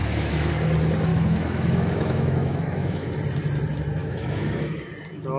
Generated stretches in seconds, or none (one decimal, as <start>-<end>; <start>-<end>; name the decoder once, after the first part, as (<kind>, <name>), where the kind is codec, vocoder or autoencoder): 0.0-0.5 (autoencoder, DAC-VAE); 1.1-3.1; 4.0-4.9